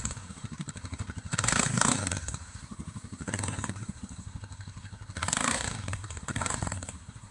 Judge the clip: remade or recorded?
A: remade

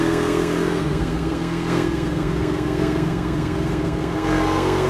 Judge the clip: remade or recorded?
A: remade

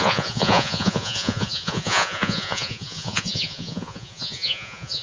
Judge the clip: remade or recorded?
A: remade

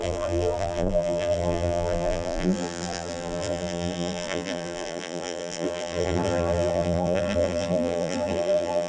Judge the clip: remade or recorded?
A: remade